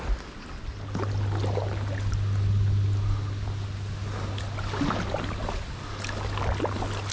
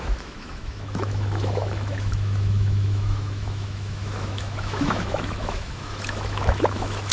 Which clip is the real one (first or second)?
first